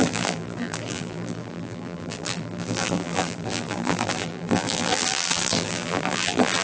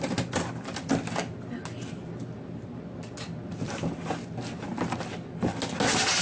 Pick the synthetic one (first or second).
first